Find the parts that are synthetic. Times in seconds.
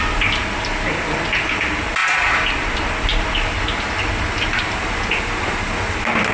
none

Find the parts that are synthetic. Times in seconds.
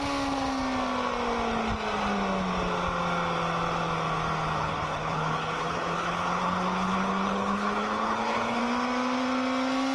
4.6-8.6 (codec, HILCodec)